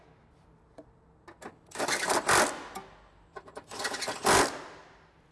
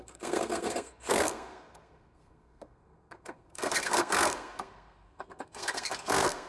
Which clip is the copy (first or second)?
second